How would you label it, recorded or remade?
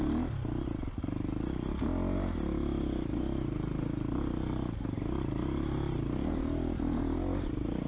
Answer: recorded